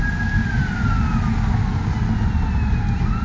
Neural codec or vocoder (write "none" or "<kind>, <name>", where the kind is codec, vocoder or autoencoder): none